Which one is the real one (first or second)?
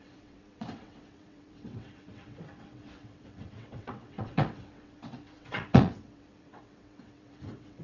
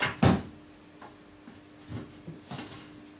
second